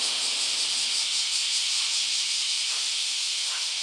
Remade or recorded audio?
remade